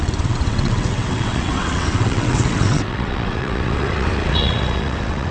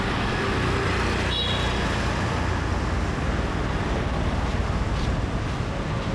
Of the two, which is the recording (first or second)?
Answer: second